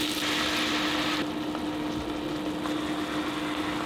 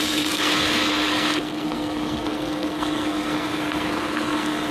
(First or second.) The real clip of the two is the first